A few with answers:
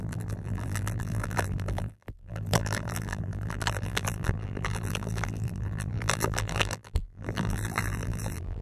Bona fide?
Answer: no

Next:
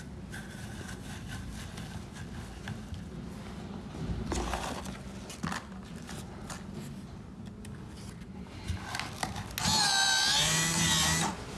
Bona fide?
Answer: yes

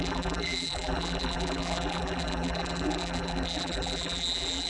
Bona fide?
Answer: no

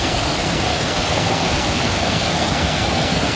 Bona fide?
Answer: no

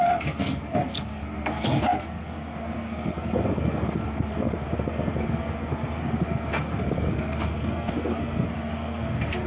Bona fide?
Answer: no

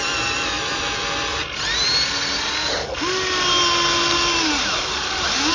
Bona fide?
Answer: yes